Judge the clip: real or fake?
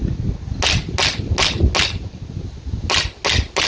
real